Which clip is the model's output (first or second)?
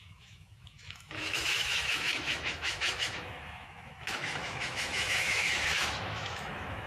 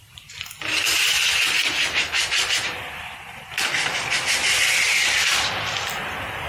first